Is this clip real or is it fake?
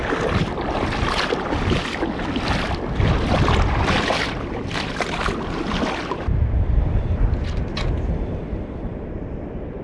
real